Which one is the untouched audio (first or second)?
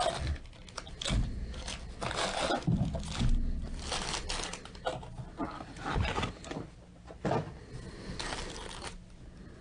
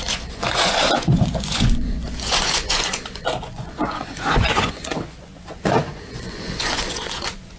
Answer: first